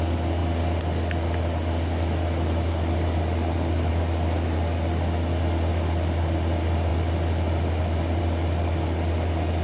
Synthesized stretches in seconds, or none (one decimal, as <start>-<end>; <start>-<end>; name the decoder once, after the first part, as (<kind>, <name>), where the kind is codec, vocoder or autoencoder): none